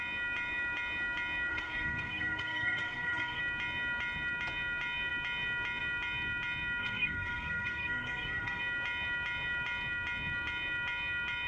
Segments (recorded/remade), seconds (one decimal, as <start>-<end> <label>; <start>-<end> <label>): 0.0-1.5 recorded; 1.5-3.4 remade; 3.4-6.8 recorded; 6.8-8.6 remade; 8.6-11.5 recorded